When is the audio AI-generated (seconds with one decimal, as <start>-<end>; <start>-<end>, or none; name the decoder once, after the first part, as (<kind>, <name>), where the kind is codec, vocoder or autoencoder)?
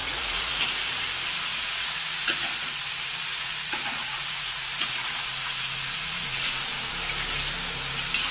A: 0.0-0.6 (vocoder, Vocos); 1.5-2.8; 3.3-6.9